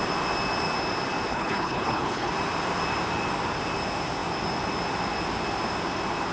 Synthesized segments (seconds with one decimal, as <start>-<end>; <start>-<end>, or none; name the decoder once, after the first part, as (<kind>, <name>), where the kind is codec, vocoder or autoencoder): 1.3-2.3 (codec, HILCodec)